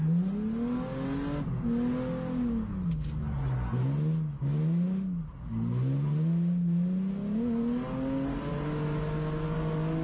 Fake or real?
real